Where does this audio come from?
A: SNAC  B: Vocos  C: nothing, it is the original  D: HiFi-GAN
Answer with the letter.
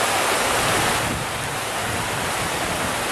C